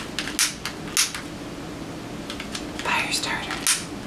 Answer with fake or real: real